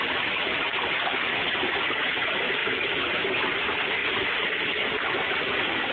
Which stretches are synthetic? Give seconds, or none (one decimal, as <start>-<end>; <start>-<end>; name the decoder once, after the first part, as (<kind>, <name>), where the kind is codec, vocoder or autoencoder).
0.0-4.0 (vocoder, BigVGAN v2); 5.4-5.9